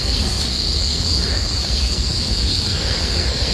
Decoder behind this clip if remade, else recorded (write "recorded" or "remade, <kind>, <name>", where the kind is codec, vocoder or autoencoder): remade, codec, SNAC